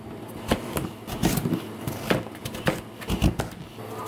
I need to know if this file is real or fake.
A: real